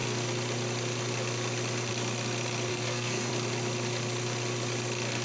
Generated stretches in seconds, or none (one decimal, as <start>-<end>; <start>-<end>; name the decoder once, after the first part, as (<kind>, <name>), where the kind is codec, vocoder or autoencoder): 2.7-3.3 (codec, SNAC)